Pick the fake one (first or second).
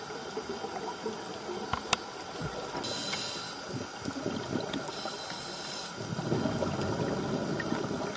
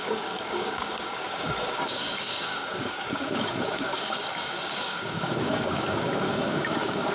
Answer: second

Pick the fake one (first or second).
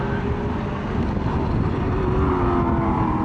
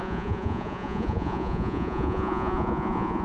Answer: second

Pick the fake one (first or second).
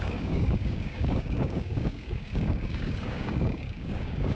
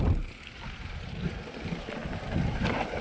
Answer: first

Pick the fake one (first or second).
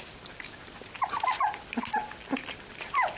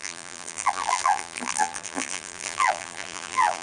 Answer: second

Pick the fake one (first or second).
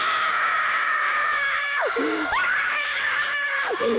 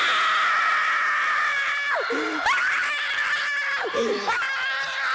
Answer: first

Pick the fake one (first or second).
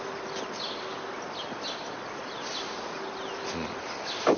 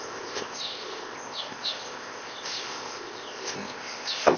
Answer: second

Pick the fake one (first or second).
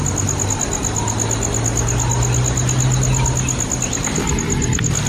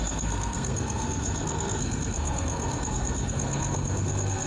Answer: second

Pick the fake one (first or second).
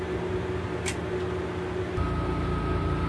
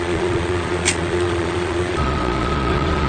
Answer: second